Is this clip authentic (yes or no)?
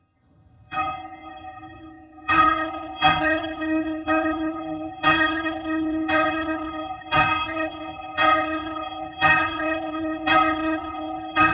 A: no